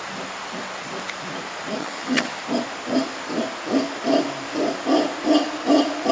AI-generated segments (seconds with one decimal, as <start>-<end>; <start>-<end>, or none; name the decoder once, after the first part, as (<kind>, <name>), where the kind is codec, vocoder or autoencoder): 1.8-2.4 (vocoder, HiFi-GAN)